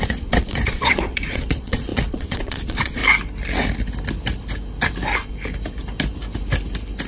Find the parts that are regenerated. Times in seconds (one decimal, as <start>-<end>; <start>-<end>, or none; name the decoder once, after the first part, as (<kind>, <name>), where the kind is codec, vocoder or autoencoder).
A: 0.0-3.0 (vocoder, Vocos)